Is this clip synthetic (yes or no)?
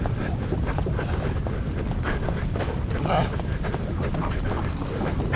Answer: no